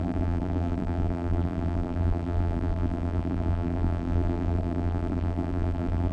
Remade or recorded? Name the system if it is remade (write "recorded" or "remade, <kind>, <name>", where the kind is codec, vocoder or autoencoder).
remade, vocoder, BigVGAN v2